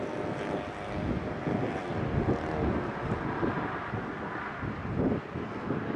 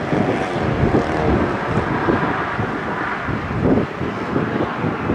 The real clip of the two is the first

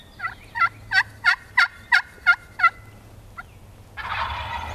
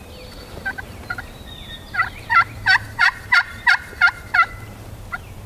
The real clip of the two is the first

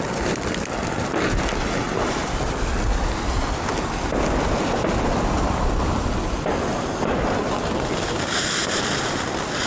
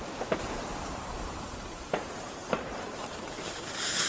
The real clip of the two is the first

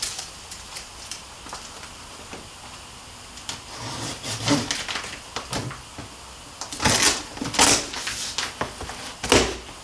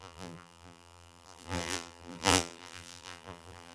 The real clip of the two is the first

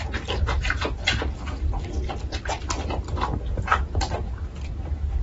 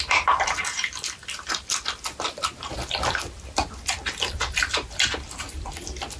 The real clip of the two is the first